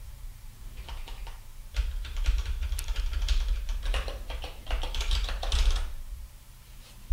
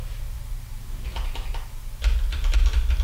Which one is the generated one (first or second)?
first